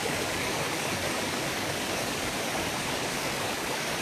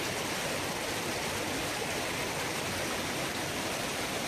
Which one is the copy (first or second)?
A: first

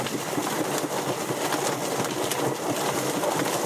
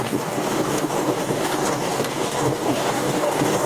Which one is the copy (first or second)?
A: second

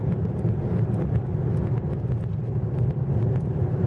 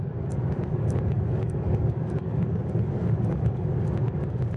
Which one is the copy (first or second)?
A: second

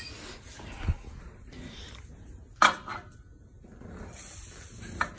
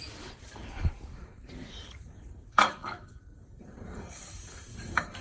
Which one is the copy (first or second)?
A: second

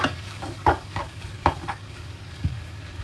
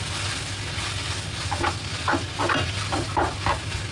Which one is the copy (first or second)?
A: first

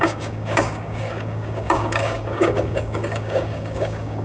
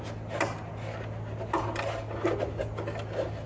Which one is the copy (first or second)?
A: first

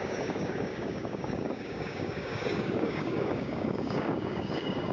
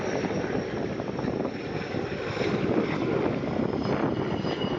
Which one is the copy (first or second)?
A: first